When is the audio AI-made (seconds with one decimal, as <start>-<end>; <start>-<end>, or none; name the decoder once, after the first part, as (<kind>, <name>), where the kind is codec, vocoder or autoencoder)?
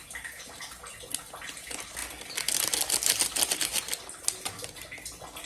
0.0-0.8 (vocoder, BigVGAN v2)